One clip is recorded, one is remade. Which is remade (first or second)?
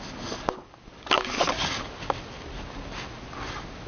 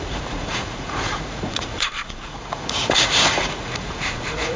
second